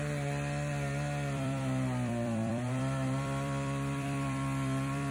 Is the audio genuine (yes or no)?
no